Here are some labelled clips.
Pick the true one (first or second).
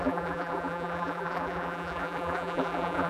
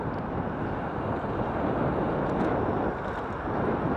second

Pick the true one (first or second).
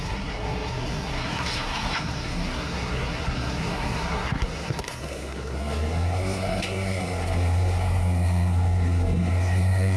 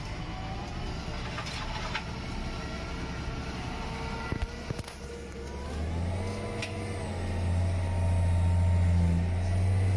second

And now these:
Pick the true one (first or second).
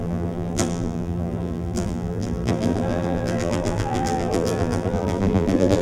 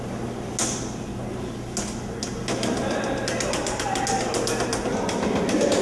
second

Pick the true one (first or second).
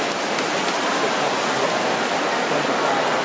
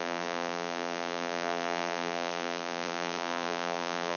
first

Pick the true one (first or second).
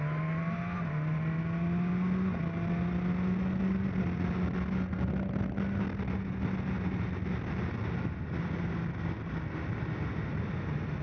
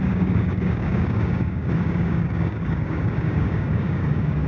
first